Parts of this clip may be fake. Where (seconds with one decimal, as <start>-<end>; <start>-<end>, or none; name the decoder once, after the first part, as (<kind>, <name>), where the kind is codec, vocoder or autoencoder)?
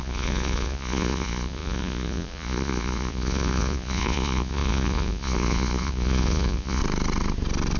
0.0-6.8 (vocoder, Vocos)